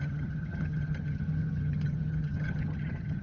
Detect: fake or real fake